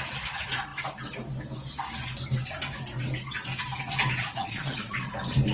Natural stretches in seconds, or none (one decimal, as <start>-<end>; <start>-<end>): 0.0-4.2; 5.1-5.5